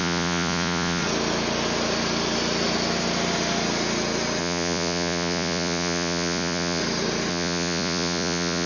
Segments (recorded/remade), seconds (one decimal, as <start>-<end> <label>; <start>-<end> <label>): 0.0-1.0 remade; 1.0-4.4 recorded; 4.4-6.8 remade; 6.8-7.3 recorded; 7.3-8.7 remade